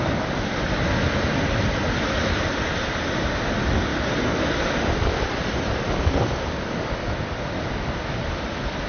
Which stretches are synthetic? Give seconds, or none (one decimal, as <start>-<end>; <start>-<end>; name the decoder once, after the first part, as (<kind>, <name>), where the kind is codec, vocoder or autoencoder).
none